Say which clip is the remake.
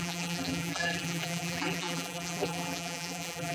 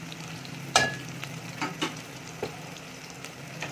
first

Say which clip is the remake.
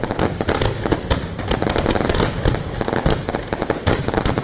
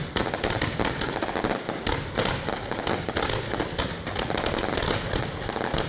first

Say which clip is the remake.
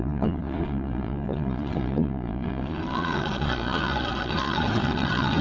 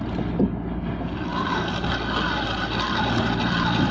first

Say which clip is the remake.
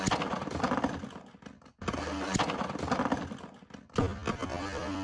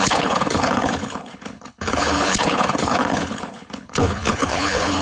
second